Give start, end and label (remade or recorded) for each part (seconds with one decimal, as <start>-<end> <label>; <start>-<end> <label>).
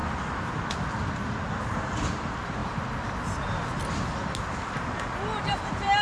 0.0-1.5 recorded; 1.5-2.6 remade; 2.6-5.4 recorded; 5.4-6.0 remade